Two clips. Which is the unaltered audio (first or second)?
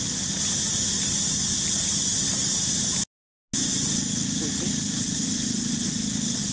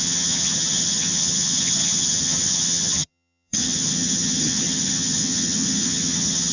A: first